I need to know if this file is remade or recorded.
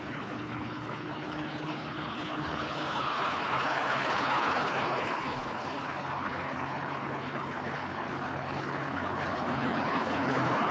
remade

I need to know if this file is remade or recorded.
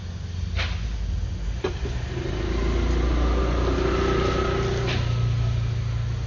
recorded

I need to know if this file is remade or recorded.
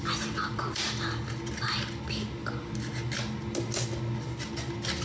recorded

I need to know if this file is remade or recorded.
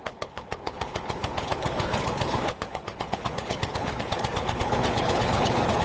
remade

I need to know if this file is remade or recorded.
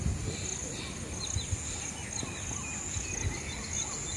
recorded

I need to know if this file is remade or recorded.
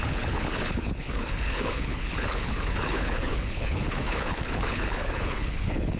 remade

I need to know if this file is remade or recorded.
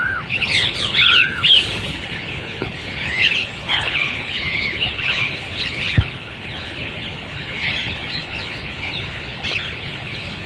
remade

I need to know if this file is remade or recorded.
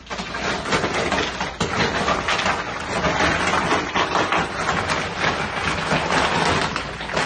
recorded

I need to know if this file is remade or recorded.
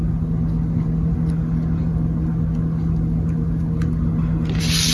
recorded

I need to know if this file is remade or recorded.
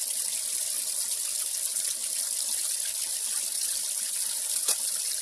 recorded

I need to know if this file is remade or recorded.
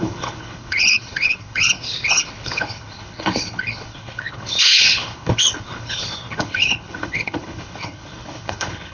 remade